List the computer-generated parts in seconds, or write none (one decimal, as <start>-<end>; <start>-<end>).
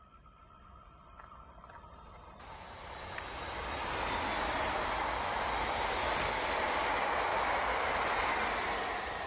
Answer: 7.3-8.2